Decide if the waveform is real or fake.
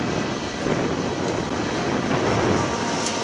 real